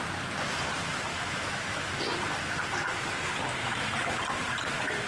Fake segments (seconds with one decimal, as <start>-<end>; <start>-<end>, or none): 1.1-2.0; 3.6-4.2

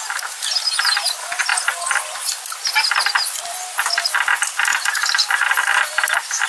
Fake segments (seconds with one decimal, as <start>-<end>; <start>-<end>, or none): 4.7-5.9

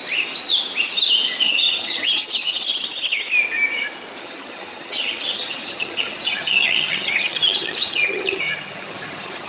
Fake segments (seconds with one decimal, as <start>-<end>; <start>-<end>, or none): 1.4-2.7; 4.2-9.5

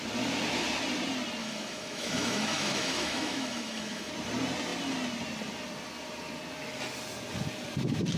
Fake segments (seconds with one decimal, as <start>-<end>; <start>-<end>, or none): 1.4-4.1

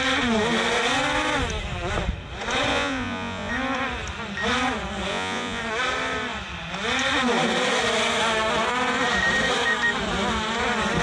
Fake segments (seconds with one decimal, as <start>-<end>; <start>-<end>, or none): 2.7-3.5; 5.1-5.6

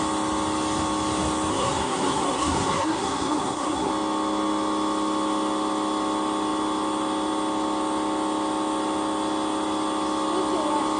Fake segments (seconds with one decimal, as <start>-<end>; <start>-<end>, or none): 1.5-3.9